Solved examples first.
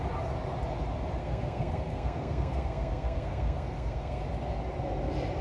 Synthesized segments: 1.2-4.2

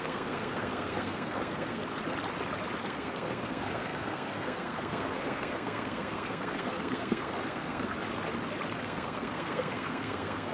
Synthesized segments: 0.0-1.8; 2.8-7.9; 8.8-10.5